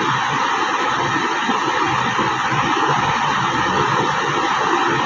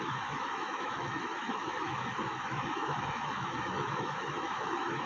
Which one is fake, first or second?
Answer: second